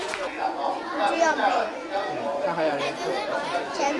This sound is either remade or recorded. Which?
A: remade